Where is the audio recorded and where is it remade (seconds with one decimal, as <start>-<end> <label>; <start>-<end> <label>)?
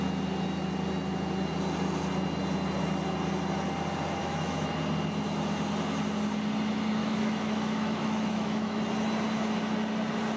0.0-4.2 recorded; 4.2-4.7 remade; 4.7-7.0 recorded; 7.0-8.8 remade; 8.8-10.4 recorded